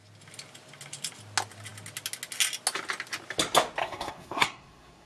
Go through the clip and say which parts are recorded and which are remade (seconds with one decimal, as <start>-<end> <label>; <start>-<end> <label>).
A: 0.0-3.8 recorded; 3.8-5.1 remade